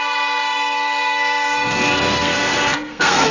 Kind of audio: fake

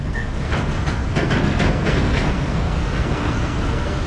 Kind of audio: fake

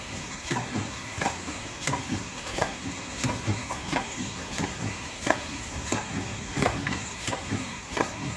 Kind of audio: fake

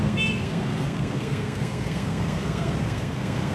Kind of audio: fake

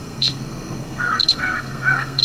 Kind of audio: fake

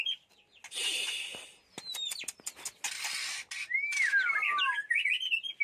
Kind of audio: real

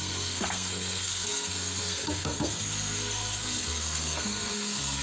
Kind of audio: fake